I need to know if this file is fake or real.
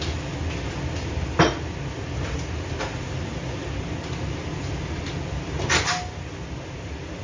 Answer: real